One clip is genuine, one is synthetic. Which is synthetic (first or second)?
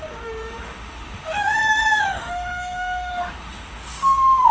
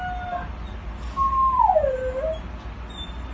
first